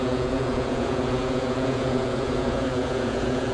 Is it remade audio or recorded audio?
remade